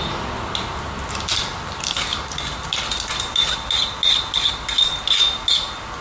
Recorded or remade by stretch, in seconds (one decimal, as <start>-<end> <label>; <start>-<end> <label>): 0.0-6.0 recorded